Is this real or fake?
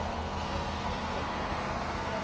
fake